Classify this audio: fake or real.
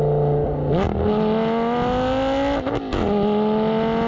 real